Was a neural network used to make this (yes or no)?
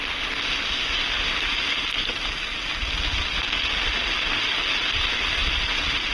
no